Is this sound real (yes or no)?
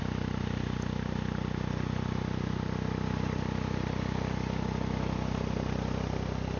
yes